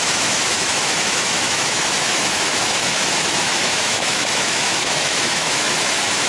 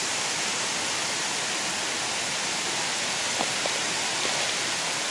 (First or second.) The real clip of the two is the second